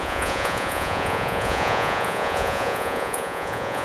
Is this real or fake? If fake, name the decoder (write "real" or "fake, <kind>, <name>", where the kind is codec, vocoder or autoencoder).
fake, vocoder, Vocos